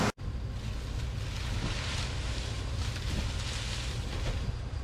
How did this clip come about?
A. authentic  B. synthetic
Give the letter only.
A